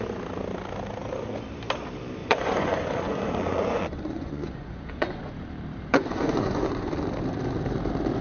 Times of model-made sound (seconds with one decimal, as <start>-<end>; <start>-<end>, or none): 2.2-5.2; 5.9-6.9